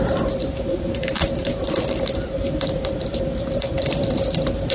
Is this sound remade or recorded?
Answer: remade